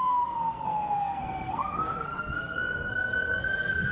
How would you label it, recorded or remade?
remade